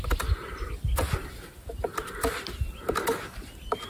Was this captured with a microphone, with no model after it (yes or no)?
yes